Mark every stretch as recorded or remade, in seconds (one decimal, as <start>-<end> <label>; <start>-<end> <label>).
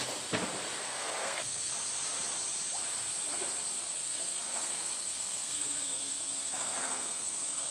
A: 0.0-0.8 recorded; 0.8-1.7 remade; 1.7-3.8 recorded; 3.8-7.7 remade